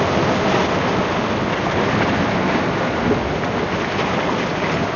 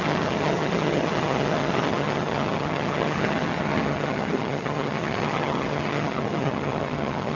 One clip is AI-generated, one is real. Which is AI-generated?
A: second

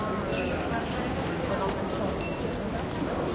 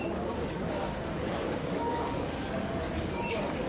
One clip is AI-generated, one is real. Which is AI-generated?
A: second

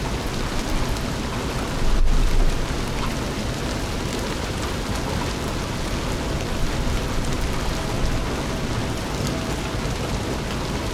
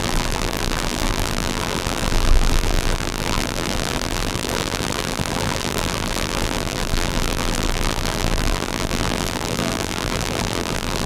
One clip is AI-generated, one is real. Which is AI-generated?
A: second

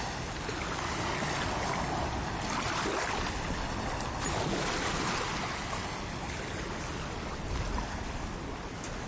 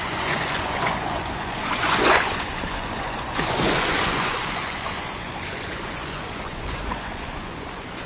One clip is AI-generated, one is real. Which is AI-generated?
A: second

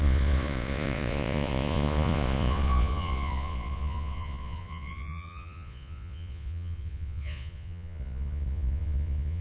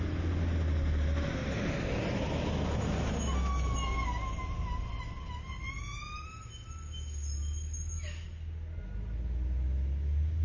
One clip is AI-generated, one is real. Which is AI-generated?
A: first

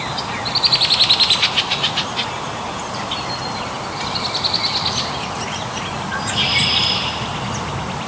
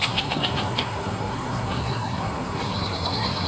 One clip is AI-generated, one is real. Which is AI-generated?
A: second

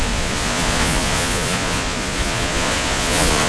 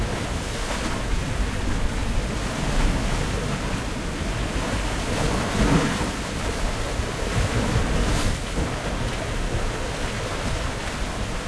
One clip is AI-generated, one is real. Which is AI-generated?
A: first